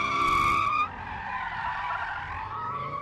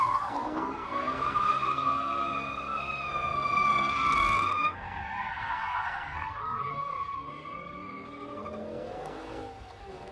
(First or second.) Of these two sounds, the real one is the first